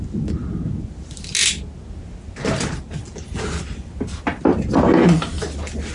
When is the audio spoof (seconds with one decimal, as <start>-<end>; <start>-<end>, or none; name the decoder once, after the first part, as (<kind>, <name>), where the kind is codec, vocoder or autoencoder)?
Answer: none